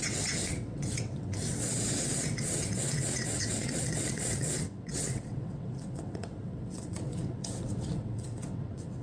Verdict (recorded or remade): remade